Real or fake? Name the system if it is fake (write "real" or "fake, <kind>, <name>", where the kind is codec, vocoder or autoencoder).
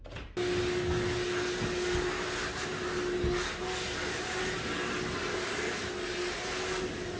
real